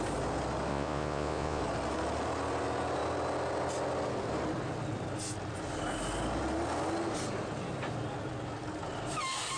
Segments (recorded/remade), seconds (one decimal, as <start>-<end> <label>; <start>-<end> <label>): 0.0-0.7 recorded; 0.7-1.6 remade; 1.6-9.6 recorded